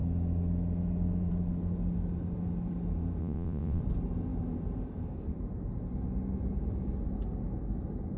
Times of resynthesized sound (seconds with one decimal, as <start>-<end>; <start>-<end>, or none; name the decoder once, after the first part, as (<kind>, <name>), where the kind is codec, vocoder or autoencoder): 3.2-3.8 (vocoder, WaveNeXt)